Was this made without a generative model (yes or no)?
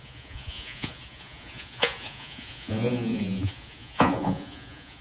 no